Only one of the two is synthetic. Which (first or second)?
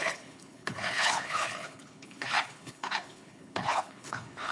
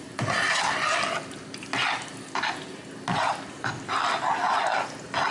first